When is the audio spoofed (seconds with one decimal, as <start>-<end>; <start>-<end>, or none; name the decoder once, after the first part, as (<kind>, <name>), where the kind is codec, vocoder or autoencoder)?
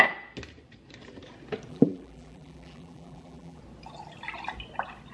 1.7-3.6 (vocoder, BigVGAN v2)